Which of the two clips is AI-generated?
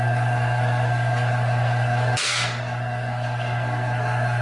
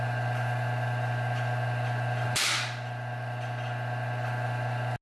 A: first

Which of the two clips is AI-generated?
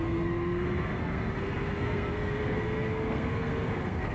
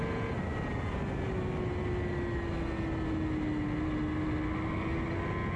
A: first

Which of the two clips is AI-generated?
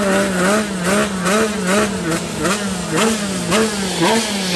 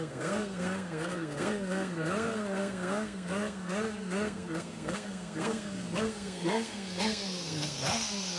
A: second